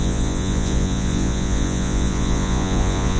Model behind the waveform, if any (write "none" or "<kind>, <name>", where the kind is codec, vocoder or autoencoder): vocoder, Vocos